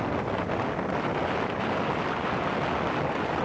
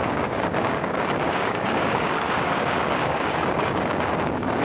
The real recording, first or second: first